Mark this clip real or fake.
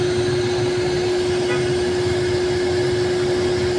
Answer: real